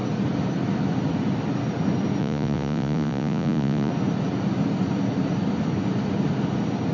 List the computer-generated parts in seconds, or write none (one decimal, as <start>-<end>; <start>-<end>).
2.2-3.9